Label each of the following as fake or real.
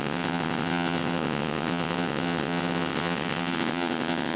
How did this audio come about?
fake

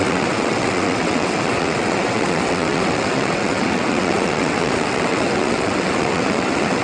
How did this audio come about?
fake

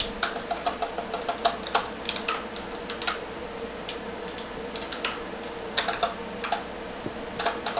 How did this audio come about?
real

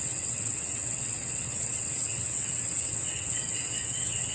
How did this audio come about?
fake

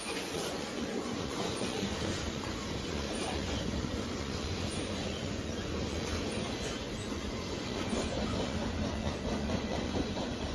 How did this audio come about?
fake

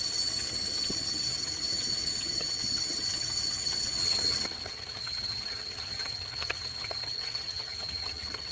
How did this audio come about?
fake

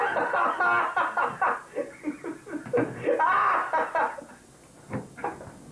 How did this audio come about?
real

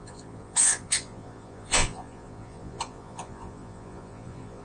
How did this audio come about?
fake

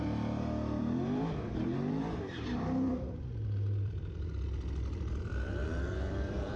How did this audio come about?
fake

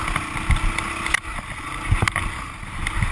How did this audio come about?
real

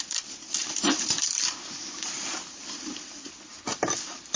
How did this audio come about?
fake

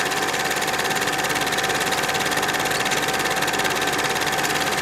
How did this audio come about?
real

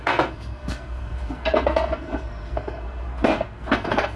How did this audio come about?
fake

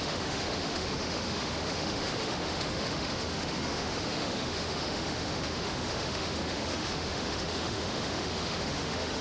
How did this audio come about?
fake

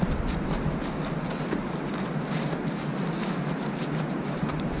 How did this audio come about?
real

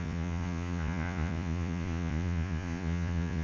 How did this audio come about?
fake